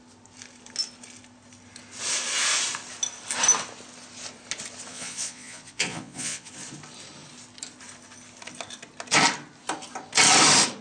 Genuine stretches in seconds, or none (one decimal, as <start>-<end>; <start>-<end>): 0.0-4.9; 6.5-10.8